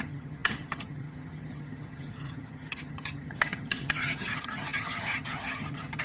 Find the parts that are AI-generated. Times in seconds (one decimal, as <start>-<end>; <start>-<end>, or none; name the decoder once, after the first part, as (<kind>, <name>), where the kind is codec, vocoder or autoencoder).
0.0-6.0 (vocoder, HiFi-GAN)